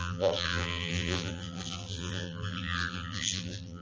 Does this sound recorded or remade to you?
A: remade